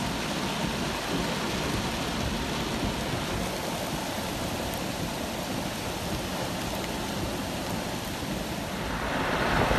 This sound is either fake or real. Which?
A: real